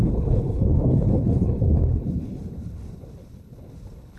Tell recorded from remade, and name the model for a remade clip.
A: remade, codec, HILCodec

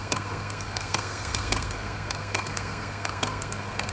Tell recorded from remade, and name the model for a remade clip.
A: remade, codec, SNAC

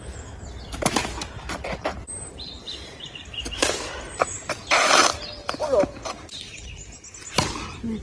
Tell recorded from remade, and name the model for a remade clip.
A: recorded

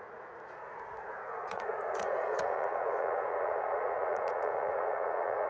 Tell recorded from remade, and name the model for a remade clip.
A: remade, vocoder, Vocos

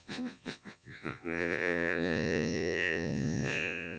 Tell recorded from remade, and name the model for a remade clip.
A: remade, vocoder, Vocos